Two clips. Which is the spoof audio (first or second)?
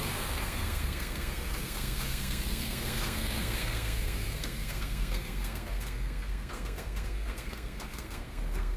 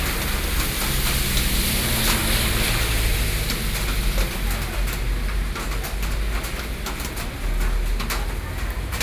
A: first